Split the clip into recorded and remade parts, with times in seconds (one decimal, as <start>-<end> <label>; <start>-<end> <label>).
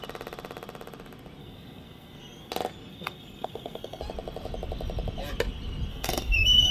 0.0-1.4 recorded; 1.4-2.5 remade; 2.5-2.9 recorded; 2.9-4.0 remade; 4.0-5.9 recorded; 5.9-6.7 remade